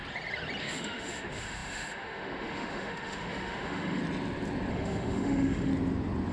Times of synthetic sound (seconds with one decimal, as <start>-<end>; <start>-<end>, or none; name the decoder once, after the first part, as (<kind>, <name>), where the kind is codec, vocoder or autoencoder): 0.6-4.0 (autoencoder, DAC-VAE); 4.7-5.7